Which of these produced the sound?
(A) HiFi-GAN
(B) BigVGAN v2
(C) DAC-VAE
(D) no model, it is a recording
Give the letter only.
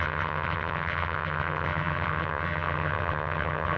A